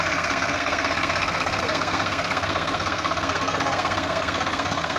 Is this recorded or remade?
remade